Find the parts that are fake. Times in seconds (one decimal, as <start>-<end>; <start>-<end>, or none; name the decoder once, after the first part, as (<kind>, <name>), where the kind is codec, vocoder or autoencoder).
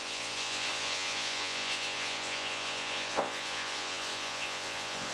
0.0-5.1 (vocoder, Vocos)